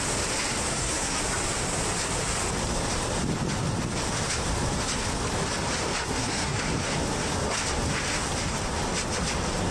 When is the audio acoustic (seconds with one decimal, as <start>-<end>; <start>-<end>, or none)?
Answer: 0.0-0.7; 1.2-6.1; 6.6-9.7